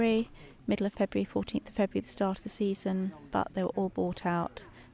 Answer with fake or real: real